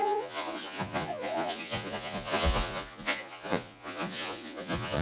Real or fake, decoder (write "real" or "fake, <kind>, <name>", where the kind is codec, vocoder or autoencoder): fake, vocoder, Vocos